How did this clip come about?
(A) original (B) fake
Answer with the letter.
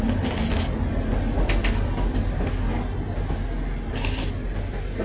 A